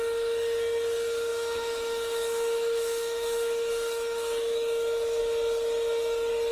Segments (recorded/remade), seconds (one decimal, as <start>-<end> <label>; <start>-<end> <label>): 0.0-1.3 recorded; 1.3-5.2 remade; 5.2-6.5 recorded